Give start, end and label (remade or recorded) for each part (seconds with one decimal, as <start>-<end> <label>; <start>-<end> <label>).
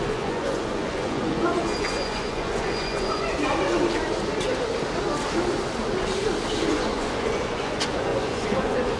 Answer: 0.0-3.3 remade; 3.3-6.6 recorded; 6.6-9.0 remade